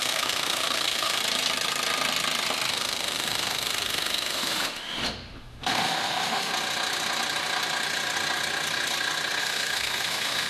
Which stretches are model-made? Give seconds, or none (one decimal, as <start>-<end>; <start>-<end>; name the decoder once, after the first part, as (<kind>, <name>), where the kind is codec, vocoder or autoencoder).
0.0-1.2 (autoencoder, DAC-VAE); 2.7-6.5; 9.4-10.5